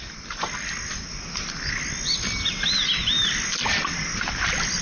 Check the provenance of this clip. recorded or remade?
recorded